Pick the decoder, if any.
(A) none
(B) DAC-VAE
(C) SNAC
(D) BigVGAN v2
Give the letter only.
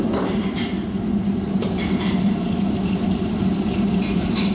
D